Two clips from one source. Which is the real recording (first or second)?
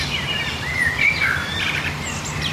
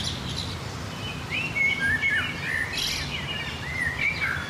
second